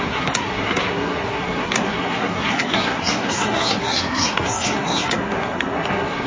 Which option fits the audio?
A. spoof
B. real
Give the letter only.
A